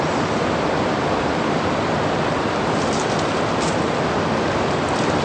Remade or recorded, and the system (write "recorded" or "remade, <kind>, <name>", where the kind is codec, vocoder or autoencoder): remade, vocoder, BigVGAN v2